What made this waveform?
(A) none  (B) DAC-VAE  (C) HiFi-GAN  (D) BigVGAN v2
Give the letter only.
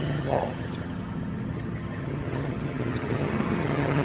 C